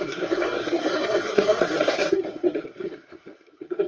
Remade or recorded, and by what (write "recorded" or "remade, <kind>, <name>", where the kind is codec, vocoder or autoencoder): remade, codec, SNAC